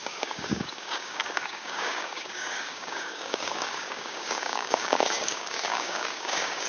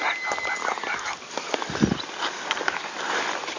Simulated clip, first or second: first